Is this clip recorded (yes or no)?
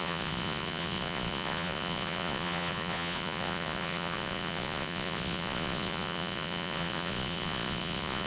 no